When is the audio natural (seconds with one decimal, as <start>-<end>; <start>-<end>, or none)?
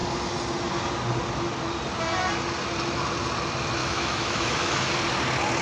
0.0-3.8; 4.9-5.6